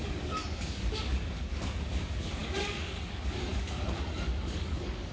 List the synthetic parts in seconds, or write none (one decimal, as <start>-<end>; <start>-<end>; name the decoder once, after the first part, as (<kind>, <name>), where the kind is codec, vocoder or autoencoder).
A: 0.0-5.1 (codec, DAC)